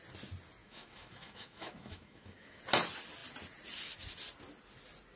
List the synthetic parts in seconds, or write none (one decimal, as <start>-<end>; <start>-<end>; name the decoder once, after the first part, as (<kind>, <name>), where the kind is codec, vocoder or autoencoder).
0.6-2.6 (autoencoder, DAC-VAE)